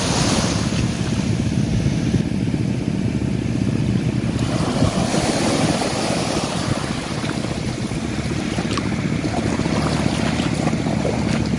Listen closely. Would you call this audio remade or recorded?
recorded